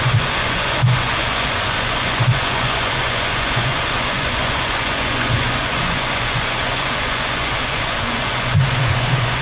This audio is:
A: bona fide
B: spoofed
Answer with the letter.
B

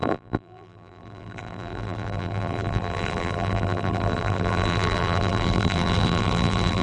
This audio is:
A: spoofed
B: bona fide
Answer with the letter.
A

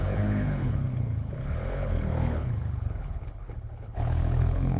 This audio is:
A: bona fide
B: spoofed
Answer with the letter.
B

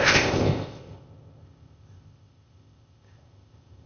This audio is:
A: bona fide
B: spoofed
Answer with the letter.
B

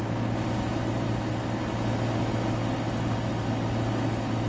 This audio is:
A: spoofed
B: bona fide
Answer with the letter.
B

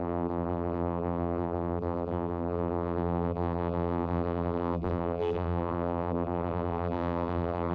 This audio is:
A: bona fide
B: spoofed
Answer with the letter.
B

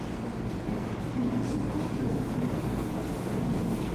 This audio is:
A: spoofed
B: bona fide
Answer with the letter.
A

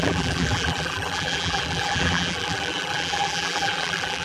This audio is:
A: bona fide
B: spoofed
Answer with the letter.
B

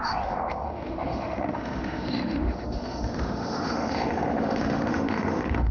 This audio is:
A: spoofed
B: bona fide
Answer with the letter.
A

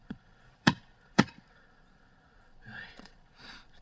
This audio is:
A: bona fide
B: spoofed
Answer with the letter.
B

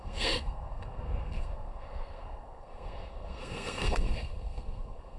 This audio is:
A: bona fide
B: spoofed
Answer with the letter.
B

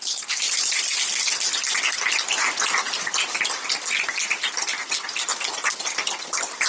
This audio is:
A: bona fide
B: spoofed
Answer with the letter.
A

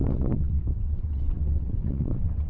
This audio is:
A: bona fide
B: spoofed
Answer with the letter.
B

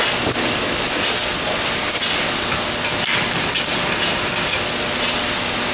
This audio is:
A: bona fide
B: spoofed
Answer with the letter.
A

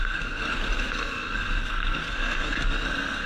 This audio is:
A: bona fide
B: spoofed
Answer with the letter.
B